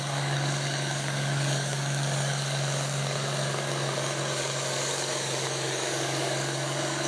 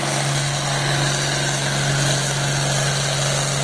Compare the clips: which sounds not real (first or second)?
first